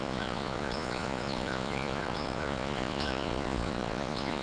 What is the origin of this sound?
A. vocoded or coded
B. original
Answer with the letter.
A